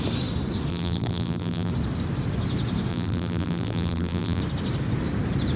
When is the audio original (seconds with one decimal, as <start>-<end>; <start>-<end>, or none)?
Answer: 0.0-0.7; 1.7-2.9; 4.4-5.6